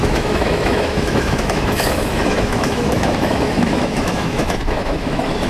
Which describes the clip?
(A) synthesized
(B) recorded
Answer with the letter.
A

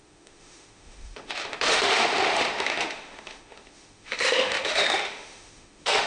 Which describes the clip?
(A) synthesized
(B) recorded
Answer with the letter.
A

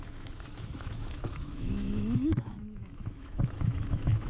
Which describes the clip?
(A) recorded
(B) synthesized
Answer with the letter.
B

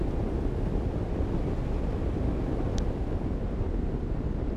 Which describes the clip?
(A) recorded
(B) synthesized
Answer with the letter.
A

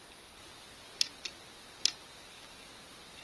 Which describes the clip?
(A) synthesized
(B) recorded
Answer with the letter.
B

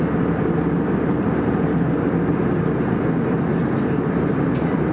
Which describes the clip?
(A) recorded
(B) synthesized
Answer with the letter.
A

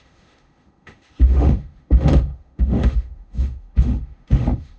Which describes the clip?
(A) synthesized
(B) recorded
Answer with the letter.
A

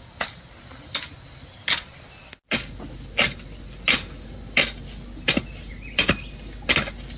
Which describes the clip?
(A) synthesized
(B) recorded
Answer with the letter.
B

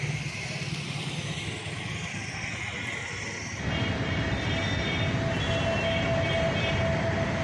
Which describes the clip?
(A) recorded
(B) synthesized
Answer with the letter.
A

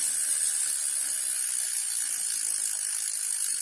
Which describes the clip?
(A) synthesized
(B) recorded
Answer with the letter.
B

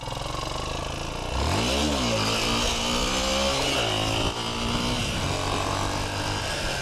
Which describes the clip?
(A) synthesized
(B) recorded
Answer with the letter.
B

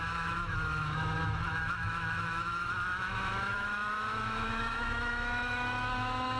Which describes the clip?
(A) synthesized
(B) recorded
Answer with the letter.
A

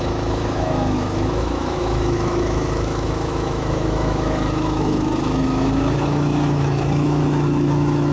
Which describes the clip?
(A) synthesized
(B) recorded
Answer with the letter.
A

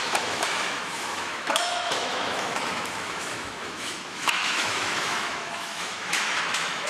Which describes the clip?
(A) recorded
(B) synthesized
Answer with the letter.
B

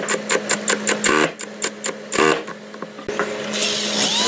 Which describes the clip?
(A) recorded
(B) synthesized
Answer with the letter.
A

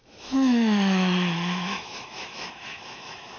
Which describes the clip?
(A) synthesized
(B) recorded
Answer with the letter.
A